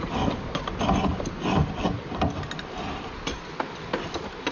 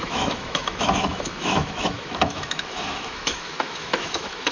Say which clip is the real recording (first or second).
first